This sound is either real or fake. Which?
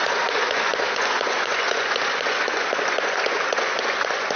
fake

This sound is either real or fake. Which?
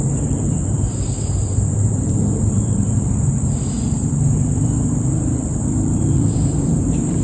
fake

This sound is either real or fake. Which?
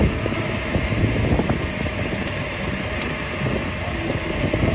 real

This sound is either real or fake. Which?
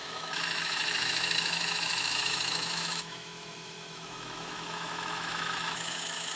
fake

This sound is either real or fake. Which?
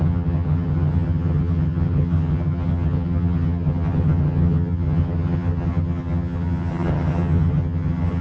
fake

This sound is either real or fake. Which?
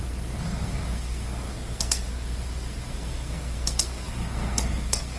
fake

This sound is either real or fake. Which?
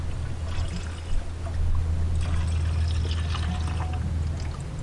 real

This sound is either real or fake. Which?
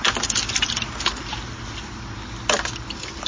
real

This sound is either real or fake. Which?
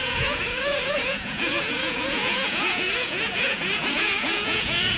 fake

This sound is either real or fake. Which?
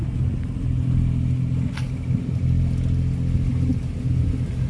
real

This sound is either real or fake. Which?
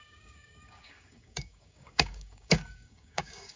fake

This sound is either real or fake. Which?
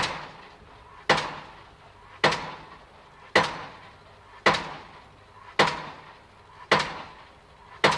real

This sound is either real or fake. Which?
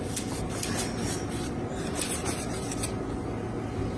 real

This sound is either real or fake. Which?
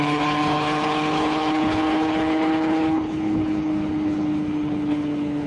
fake